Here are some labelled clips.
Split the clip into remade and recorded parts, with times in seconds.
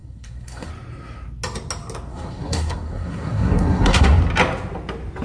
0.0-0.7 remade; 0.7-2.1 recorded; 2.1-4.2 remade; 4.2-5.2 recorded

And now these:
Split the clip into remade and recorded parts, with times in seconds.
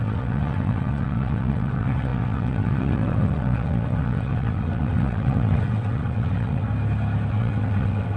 0.0-6.7 remade; 6.7-7.3 recorded; 7.3-8.2 remade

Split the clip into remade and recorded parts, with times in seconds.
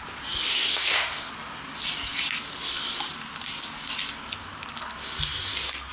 0.0-0.5 recorded; 0.5-1.3 remade; 1.3-5.9 recorded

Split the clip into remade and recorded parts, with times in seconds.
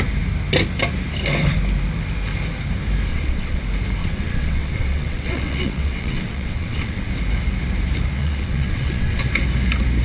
0.0-3.1 recorded; 3.1-3.6 remade; 3.6-4.0 recorded; 4.0-7.1 remade; 7.1-8.2 recorded; 8.2-9.2 remade; 9.2-10.0 recorded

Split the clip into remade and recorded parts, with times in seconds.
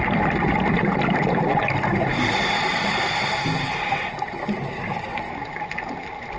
0.0-4.4 recorded; 4.4-5.2 remade; 5.2-6.4 recorded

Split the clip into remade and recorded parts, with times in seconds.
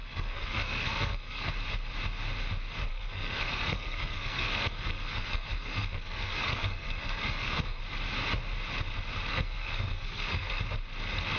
0.0-1.5 remade; 1.5-2.9 recorded; 2.9-7.8 remade; 7.8-9.3 recorded; 9.3-10.6 remade; 10.6-11.4 recorded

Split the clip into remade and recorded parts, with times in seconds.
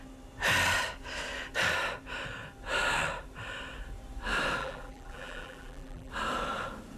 0.0-4.6 recorded; 4.6-6.1 remade; 6.1-7.0 recorded